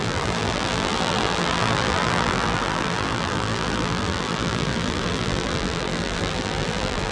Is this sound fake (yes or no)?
yes